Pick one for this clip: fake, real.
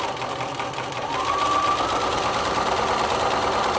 real